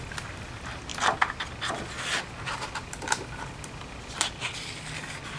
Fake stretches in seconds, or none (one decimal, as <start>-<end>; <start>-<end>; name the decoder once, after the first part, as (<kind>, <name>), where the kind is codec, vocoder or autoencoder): none